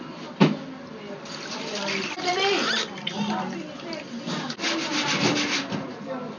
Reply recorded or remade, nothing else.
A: recorded